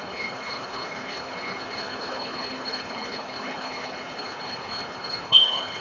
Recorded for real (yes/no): no